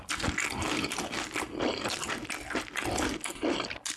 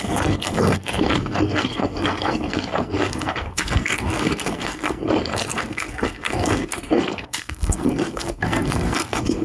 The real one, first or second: first